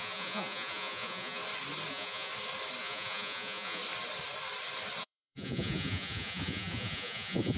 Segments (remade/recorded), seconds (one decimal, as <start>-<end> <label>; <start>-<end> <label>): 0.0-1.4 remade; 1.4-1.9 recorded; 1.9-2.3 remade; 2.3-2.8 recorded; 2.8-3.8 remade; 3.8-5.0 recorded; 5.0-7.6 remade